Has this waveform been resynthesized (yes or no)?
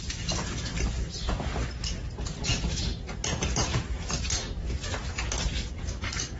no